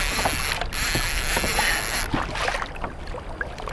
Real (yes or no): yes